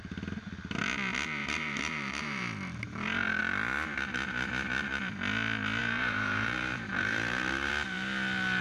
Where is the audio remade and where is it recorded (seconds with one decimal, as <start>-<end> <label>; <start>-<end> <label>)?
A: 0.0-1.4 recorded; 1.4-3.4 remade; 3.4-5.8 recorded; 5.8-7.7 remade; 7.7-8.6 recorded